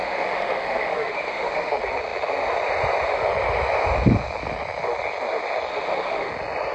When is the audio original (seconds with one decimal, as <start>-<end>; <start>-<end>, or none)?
1.7-5.7; 6.3-6.7